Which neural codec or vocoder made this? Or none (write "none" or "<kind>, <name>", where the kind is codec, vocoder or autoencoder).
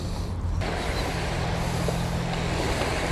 none